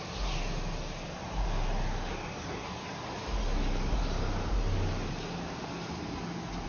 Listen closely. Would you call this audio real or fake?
real